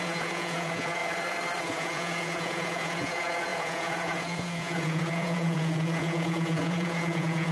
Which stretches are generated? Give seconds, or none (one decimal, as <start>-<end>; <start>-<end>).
0.0-1.0; 1.6-7.5

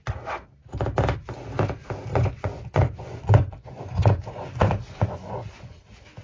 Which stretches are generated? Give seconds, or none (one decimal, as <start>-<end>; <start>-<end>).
2.1-5.8

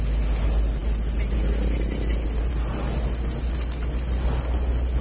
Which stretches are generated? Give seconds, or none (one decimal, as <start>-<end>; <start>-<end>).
none

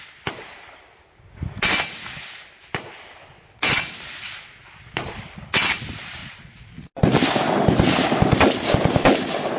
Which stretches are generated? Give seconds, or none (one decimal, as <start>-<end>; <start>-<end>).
3.2-3.7; 6.2-6.9

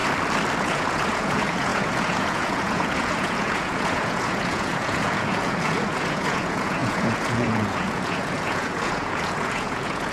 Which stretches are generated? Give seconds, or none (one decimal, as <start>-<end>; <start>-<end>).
0.6-10.1

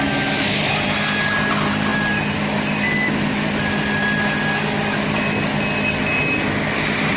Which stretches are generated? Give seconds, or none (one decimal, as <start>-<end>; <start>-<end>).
none

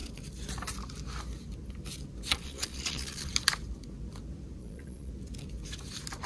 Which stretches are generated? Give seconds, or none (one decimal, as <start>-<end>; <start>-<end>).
2.3-3.3; 4.6-5.1

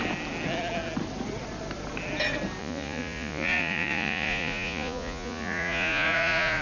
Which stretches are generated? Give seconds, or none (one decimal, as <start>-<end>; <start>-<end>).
2.6-6.6